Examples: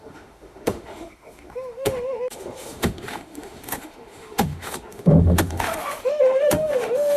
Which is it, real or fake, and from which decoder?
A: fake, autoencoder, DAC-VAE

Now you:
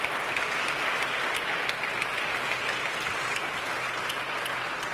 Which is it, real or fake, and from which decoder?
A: real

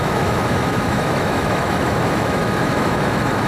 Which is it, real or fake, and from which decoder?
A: fake, autoencoder, DAC-VAE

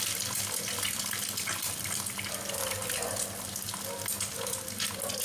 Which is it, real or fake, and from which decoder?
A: real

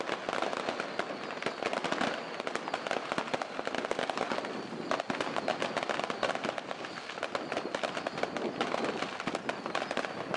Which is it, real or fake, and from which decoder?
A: real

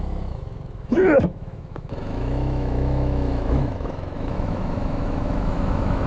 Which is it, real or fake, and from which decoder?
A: fake, autoencoder, DAC-VAE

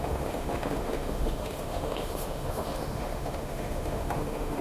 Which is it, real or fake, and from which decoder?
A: fake, autoencoder, DAC-VAE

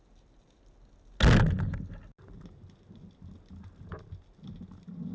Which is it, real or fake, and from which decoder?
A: real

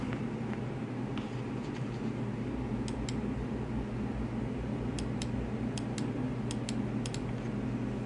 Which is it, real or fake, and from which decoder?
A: real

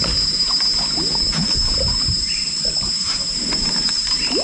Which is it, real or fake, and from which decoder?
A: real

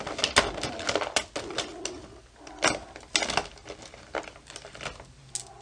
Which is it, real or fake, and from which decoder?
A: real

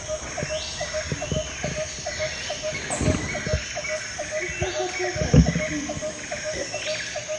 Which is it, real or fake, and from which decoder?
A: real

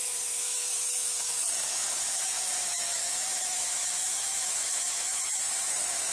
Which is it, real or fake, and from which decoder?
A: fake, autoencoder, DAC-VAE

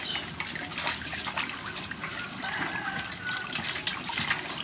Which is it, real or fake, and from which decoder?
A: real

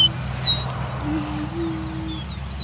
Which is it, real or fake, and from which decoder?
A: real